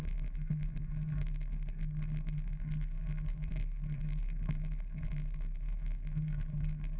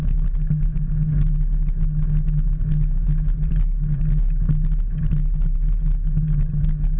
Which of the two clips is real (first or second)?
second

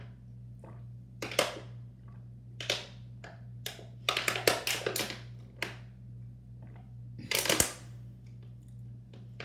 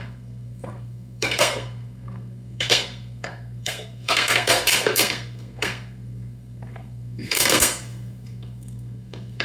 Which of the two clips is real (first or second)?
first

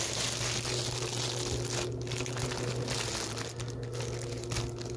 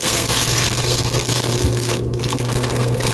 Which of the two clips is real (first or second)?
first